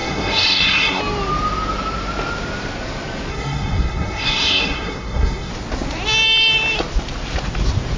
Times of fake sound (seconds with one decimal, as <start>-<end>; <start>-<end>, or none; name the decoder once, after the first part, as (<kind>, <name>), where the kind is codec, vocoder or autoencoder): 0.0-1.0 (codec, SNAC); 3.3-5.5